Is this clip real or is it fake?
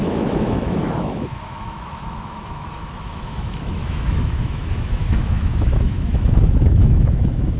fake